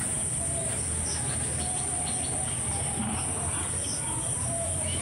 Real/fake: real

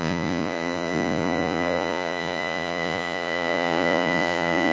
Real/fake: fake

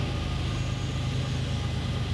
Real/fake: real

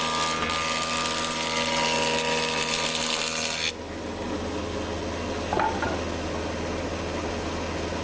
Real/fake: real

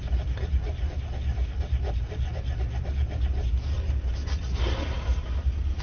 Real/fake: real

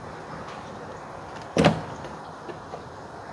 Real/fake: real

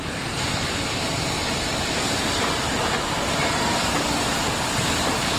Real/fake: real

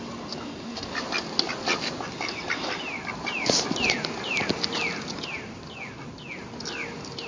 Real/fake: real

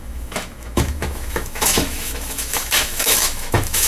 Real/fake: fake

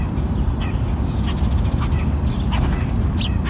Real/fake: real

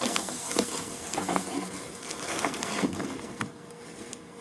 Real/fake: fake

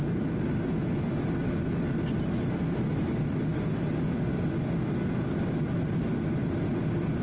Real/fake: real